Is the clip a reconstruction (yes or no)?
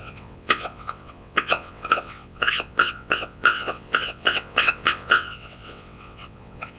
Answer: yes